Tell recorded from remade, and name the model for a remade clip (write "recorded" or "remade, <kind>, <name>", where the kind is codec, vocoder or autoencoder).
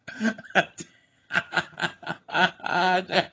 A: remade, vocoder, HiFi-GAN